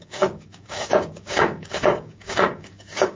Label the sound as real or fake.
fake